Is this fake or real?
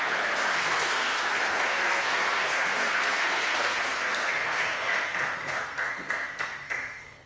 fake